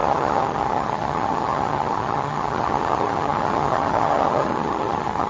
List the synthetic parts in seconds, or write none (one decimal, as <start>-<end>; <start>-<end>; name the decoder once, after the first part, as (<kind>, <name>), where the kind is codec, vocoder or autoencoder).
0.0-5.3 (vocoder, HiFi-GAN)